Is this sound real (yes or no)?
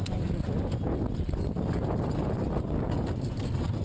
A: yes